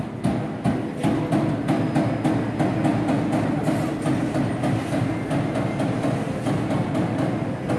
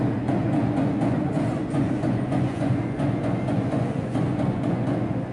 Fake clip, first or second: second